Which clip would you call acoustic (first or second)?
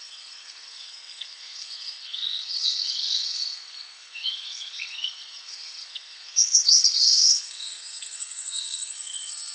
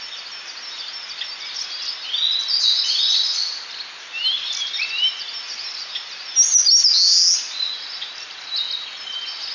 second